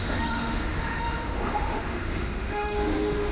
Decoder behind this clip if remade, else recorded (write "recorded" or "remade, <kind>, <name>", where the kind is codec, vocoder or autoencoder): remade, autoencoder, DAC-VAE